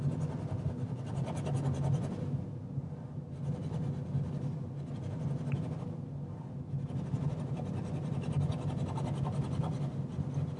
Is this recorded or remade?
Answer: recorded